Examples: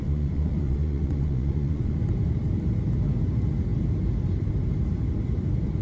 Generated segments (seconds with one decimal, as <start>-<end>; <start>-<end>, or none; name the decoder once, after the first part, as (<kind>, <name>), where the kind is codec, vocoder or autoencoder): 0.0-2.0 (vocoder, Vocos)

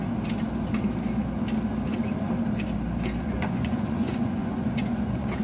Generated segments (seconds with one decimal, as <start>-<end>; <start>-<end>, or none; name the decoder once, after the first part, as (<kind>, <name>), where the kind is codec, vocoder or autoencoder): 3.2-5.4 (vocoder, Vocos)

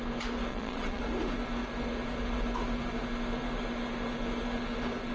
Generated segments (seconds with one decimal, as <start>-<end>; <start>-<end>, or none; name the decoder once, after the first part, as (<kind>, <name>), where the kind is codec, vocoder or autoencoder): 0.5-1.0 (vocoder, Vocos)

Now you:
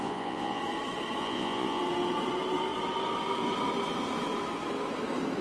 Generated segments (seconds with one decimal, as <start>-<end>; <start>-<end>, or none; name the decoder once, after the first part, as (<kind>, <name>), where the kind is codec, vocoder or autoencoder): 0.0-0.6 (vocoder, Vocos); 1.2-1.8

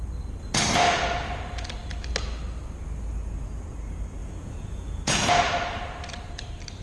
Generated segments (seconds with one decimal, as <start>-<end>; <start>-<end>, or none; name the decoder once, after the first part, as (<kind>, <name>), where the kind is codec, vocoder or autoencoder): 4.2-5.3 (vocoder, Vocos)

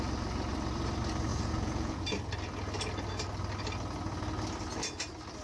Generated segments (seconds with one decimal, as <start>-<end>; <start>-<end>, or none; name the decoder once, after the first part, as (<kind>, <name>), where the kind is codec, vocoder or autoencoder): 1.3-2.0 (vocoder, Vocos)